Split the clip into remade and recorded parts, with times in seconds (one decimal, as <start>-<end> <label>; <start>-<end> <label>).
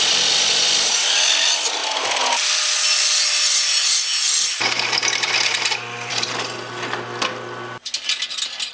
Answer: 0.0-8.7 recorded